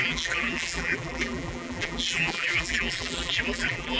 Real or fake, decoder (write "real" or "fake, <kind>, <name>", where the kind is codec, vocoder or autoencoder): fake, vocoder, BigVGAN v2